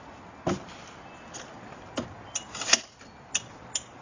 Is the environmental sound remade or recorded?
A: recorded